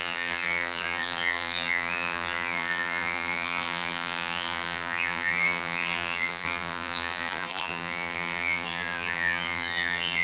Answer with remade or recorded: remade